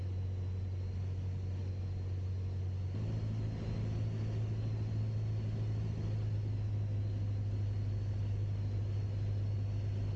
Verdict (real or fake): real